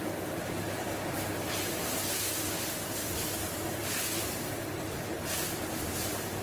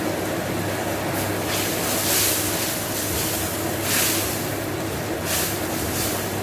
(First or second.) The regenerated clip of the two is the first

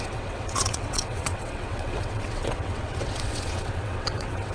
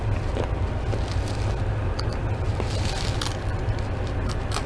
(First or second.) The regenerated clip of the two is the first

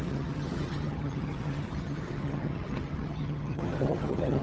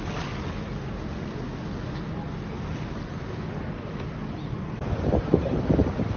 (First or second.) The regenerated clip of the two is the first